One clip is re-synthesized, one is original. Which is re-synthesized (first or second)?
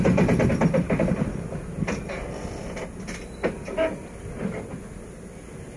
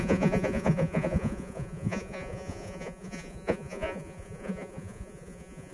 second